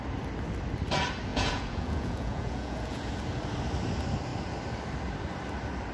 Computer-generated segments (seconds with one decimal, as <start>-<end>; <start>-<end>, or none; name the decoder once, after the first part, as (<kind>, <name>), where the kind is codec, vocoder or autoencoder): 1.3-3.1 (vocoder, Vocos)